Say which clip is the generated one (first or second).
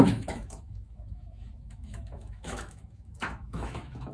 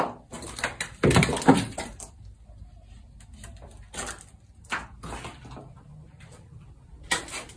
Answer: first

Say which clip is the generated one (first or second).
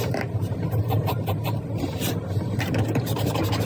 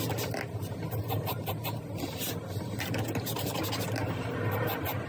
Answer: first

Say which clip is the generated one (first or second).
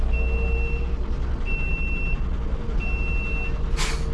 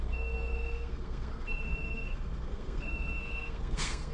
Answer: second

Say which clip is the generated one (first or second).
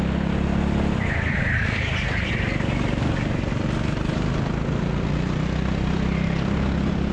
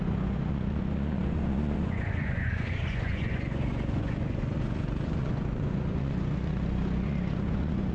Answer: second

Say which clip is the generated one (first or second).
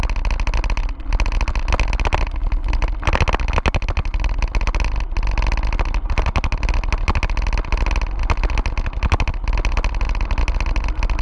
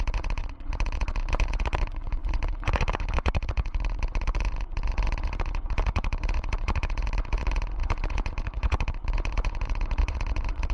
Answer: second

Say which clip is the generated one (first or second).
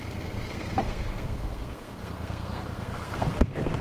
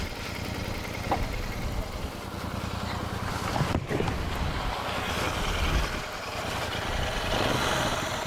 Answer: first